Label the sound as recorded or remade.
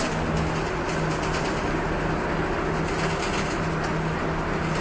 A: recorded